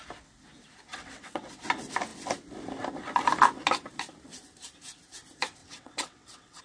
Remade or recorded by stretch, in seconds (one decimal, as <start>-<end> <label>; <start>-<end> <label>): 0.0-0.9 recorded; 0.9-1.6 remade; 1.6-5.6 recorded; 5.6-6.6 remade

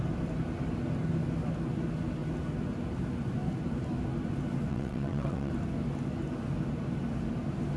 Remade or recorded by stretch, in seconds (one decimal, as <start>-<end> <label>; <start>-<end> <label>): 0.0-4.7 recorded; 4.7-5.5 remade; 5.5-7.8 recorded

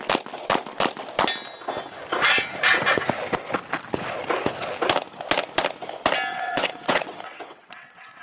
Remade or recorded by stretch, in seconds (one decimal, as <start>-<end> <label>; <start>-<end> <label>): 0.0-6.3 recorded; 6.3-8.2 remade

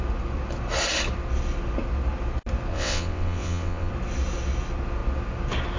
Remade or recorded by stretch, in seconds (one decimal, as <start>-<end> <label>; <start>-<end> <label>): 0.0-2.7 recorded; 2.7-3.9 remade; 3.9-5.8 recorded